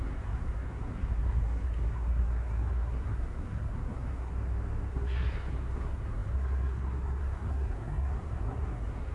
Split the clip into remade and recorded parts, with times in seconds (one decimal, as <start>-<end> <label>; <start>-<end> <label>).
0.0-4.3 remade; 4.3-4.9 recorded; 4.9-9.1 remade